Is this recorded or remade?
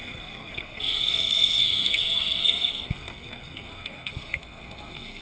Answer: remade